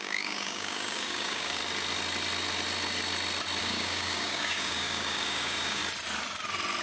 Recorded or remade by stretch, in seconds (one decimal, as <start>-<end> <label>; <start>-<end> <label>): 0.0-1.6 remade; 1.6-3.6 recorded; 3.6-5.8 remade; 5.8-6.8 recorded